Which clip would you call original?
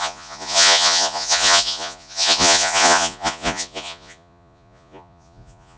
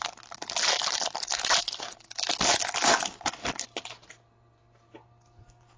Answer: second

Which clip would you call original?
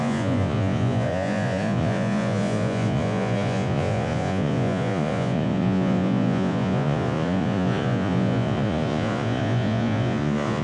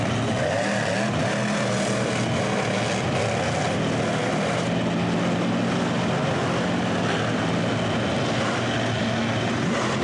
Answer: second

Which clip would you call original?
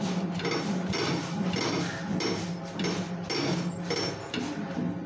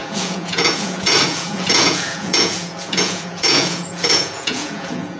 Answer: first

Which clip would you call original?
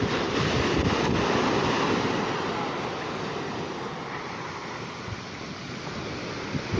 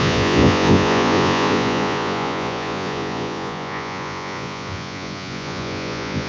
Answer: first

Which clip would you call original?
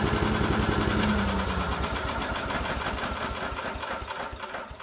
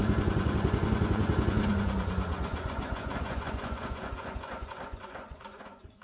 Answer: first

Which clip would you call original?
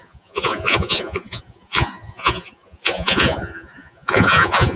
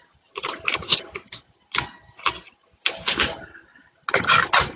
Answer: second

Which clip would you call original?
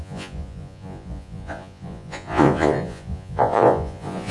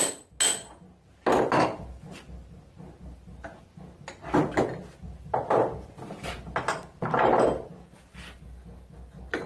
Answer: second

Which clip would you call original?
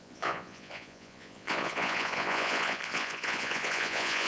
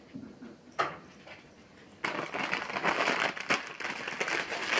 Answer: second